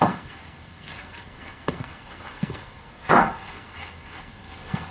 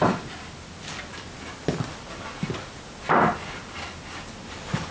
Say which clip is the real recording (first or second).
second